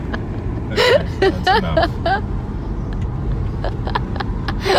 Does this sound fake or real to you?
real